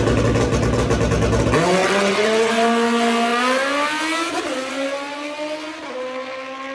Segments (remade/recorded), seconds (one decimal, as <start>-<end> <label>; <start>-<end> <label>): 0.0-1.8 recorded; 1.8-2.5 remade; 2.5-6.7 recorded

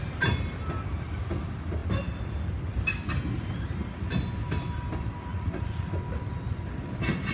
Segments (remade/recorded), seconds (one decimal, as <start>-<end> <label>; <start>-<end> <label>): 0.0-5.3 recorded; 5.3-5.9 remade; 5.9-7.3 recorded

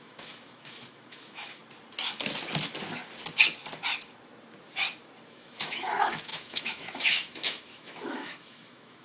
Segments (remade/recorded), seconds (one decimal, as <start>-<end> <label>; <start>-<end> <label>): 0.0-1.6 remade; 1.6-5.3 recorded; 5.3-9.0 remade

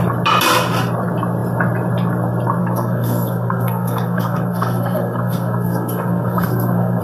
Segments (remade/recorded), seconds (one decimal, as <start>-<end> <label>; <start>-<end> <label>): 0.0-2.6 recorded; 2.6-7.0 remade

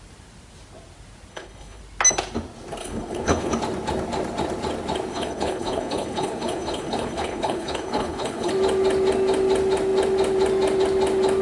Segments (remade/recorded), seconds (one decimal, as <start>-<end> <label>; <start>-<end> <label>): 0.0-1.3 recorded; 1.3-1.8 remade; 1.8-2.8 recorded; 2.8-3.5 remade; 3.5-5.1 recorded; 5.1-8.5 remade; 8.5-11.4 recorded

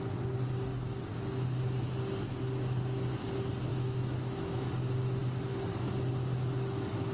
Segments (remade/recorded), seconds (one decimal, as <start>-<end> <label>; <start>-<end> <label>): 0.0-3.7 recorded; 3.7-4.7 remade; 4.7-7.1 recorded

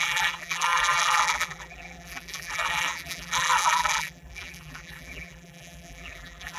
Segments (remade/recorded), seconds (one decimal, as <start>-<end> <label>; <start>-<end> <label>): 0.0-6.6 remade

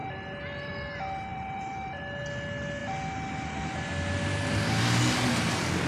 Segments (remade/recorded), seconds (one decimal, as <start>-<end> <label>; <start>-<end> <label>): 0.0-1.3 recorded; 1.3-2.0 remade; 2.0-5.9 recorded